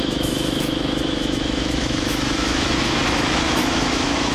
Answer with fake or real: fake